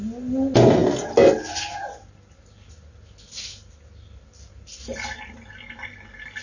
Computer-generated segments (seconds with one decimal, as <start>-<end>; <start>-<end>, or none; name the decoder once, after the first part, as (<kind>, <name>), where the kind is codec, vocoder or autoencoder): none